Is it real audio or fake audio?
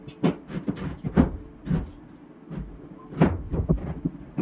real